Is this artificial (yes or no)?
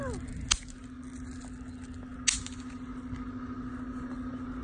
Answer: no